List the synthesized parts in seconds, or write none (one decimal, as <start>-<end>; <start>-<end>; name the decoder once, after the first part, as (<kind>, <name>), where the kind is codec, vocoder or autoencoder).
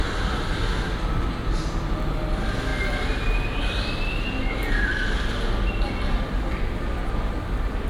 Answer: 2.7-5.9 (vocoder, BigVGAN v2)